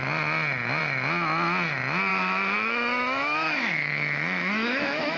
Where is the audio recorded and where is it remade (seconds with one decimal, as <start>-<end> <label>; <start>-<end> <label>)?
0.0-2.1 recorded; 2.1-5.2 remade